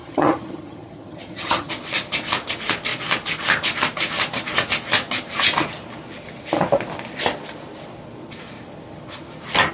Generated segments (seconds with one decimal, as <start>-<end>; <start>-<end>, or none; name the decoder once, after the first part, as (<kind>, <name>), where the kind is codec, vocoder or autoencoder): 0.0-1.7 (vocoder, HiFi-GAN)